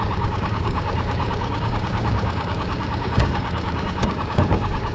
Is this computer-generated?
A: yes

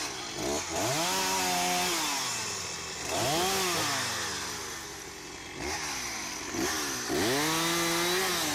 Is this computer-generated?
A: no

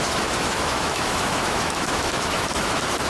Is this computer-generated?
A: yes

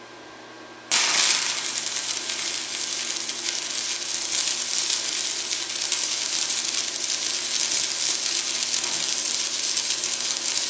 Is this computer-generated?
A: no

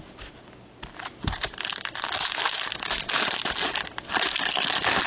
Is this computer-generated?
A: no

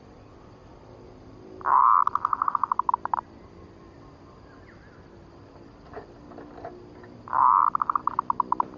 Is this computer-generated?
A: yes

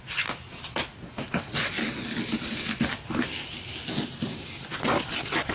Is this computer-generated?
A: no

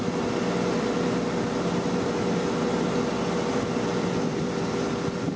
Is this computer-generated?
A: no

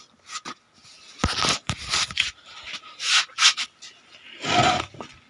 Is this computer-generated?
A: no